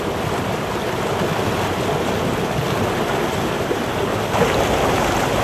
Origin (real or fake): real